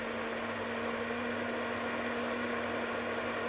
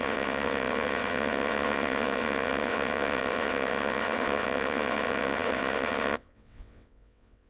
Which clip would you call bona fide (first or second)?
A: first